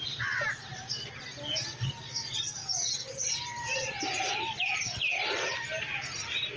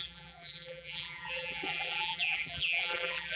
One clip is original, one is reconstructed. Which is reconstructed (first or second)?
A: second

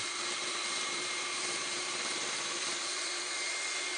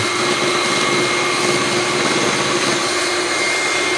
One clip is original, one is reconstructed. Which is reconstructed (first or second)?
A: first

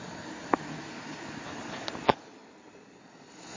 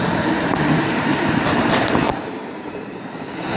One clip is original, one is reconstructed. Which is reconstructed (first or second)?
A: second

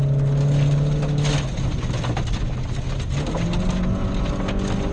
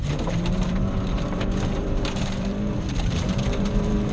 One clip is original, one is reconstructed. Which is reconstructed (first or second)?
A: second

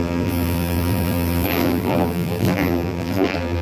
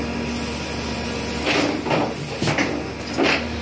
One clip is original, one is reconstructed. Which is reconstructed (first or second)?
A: first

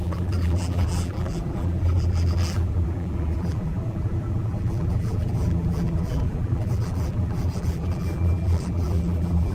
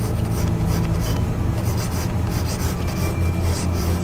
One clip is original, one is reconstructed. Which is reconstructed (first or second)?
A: first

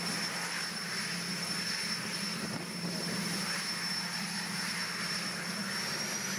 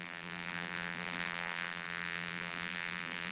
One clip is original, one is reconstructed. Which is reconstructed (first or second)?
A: second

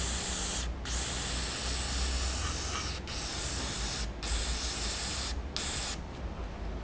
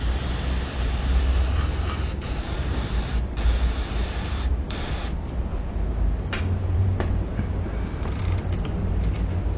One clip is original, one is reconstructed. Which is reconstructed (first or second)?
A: second